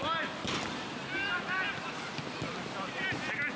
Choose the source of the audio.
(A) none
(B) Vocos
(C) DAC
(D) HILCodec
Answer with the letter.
A